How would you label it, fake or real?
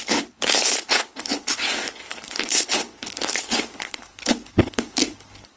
fake